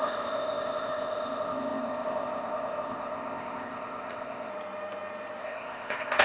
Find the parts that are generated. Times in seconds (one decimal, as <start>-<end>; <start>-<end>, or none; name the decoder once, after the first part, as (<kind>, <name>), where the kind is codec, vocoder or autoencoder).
0.0-4.5 (codec, ZipCodec); 5.4-6.2